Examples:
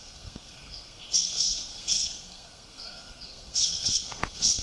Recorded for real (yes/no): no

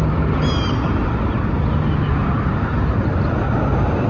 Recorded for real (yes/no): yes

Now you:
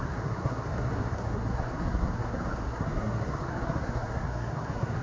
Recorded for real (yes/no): no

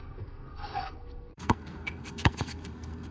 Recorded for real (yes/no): no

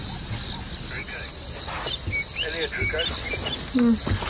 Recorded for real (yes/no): yes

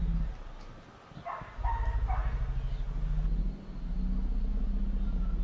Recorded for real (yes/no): yes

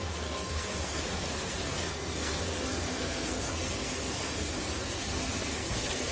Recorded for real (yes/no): no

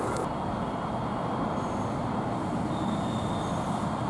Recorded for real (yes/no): yes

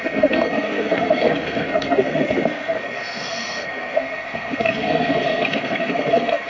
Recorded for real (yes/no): no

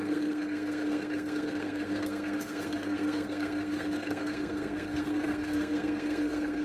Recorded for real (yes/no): no